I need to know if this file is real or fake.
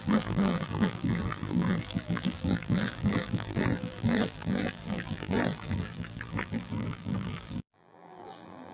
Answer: fake